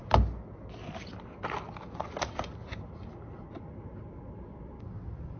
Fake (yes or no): no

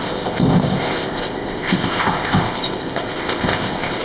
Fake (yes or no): yes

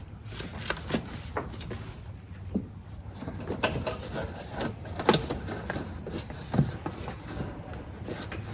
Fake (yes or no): no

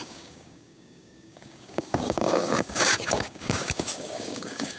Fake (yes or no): yes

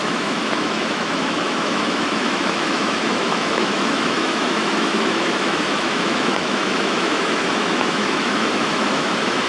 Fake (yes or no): yes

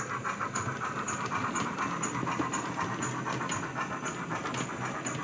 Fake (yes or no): no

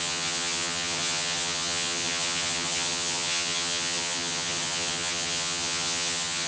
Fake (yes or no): yes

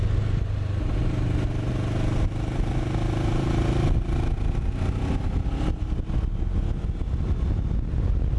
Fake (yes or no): no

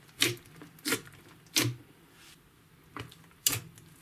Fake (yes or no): no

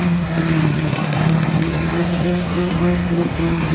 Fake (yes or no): yes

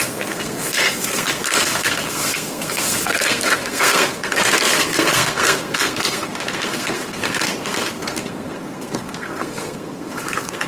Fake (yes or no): yes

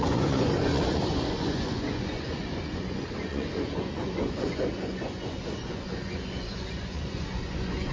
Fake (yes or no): yes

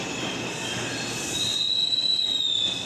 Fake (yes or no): no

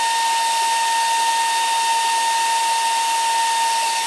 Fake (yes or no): no